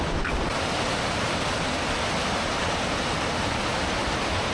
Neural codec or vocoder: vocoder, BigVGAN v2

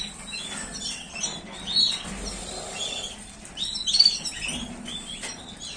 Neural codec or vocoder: none